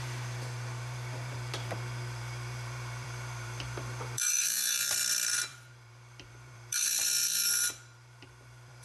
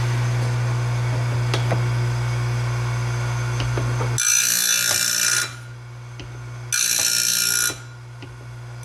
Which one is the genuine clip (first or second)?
second